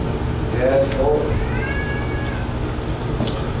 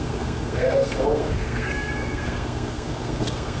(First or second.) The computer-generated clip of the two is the second